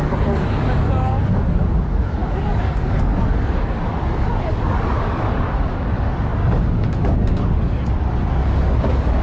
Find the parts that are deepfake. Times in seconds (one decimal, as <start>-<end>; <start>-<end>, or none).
0.0-9.2